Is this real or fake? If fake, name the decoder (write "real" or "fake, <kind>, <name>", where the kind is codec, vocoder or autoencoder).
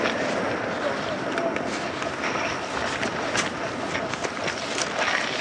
real